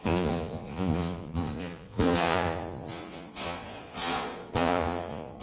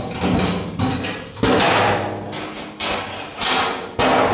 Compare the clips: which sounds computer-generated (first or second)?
first